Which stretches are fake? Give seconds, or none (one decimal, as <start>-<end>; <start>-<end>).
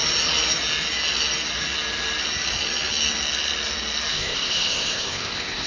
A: 4.1-5.7